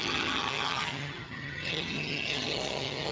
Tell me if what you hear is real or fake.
fake